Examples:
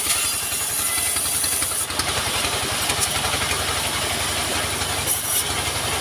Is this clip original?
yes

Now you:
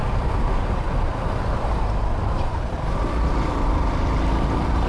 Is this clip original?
yes